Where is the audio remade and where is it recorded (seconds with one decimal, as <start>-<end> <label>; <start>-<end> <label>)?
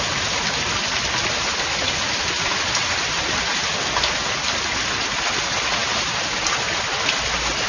0.0-7.7 recorded